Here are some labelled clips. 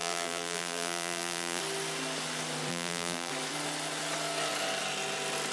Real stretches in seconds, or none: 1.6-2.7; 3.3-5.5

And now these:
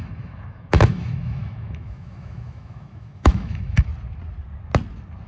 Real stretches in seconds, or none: 3.9-5.3

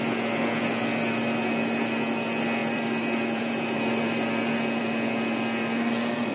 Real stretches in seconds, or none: 0.0-2.6; 4.8-6.3

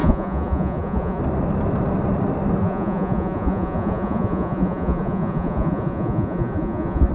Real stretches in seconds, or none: 1.2-2.6

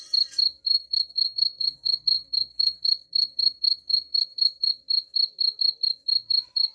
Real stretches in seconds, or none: 0.0-0.7; 4.7-6.7

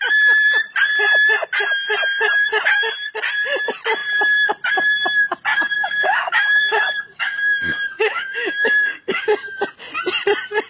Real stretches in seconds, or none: 0.0-5.5; 9.3-10.7

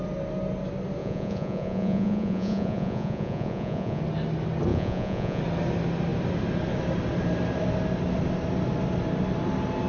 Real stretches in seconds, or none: 0.0-1.0; 4.0-4.7; 5.4-9.9

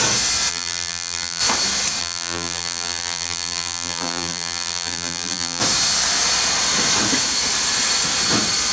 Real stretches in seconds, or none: 0.0-0.5; 1.4-2.0; 5.6-8.7